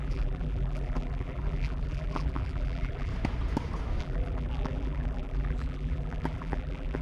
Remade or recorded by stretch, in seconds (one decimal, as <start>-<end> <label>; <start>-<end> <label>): 0.0-3.1 remade; 3.1-4.0 recorded; 4.0-7.0 remade